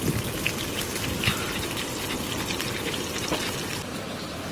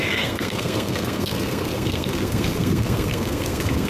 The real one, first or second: first